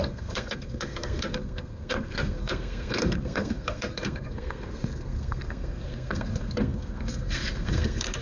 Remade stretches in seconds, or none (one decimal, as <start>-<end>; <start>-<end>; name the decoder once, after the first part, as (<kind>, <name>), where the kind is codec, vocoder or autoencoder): 0.0-8.2 (codec, SNAC)